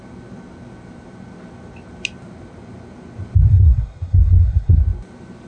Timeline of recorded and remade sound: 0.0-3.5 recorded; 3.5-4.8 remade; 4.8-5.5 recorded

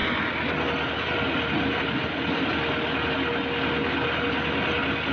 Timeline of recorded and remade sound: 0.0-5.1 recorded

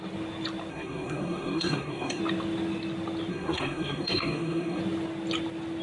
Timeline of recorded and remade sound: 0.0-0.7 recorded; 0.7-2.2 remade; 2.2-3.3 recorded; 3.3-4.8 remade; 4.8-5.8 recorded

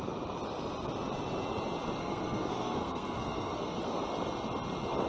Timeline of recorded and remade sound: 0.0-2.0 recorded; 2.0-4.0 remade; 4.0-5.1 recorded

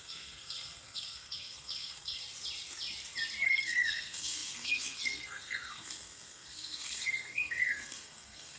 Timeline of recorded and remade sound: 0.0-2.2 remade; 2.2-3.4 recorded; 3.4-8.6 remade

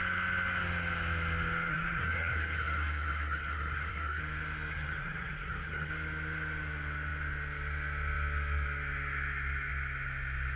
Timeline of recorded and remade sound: 0.0-1.7 recorded; 1.7-4.2 remade; 4.2-4.7 recorded; 4.7-5.9 remade; 5.9-10.6 recorded

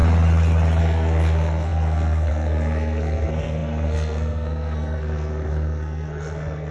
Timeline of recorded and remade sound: 0.0-0.8 recorded; 0.8-6.7 remade